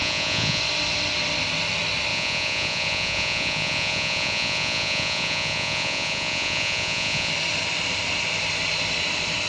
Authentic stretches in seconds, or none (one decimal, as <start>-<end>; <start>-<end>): 0.6-2.1; 7.3-9.5